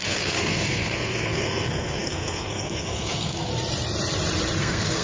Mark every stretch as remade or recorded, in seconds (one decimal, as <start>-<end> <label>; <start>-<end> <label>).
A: 0.0-3.5 remade; 3.5-4.6 recorded; 4.6-5.0 remade